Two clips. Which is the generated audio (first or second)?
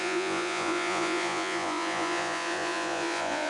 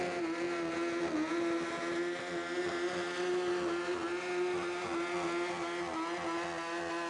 first